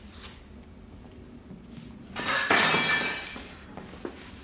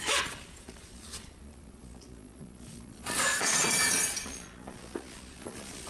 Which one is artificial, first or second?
second